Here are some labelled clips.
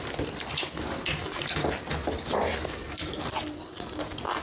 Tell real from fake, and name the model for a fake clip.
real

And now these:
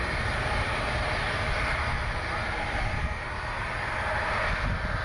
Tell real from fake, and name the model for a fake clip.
real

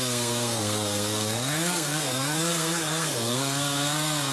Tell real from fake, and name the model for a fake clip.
fake, codec, SNAC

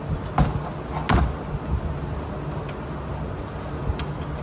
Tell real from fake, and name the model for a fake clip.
real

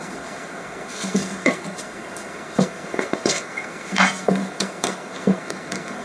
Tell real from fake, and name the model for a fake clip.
fake, codec, SNAC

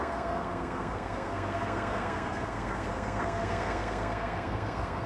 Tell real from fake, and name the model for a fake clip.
fake, codec, SNAC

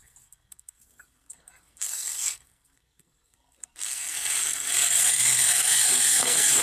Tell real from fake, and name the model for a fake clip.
fake, codec, SNAC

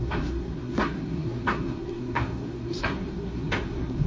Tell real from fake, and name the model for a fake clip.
fake, codec, SNAC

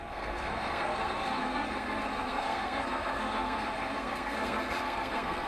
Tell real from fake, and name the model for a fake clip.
fake, codec, SNAC